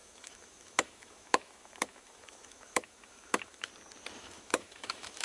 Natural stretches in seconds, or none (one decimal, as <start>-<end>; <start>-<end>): 3.7-4.2